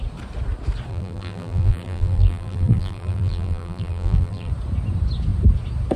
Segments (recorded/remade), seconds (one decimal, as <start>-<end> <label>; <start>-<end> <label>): 0.0-0.9 recorded; 0.9-4.5 remade; 4.5-6.0 recorded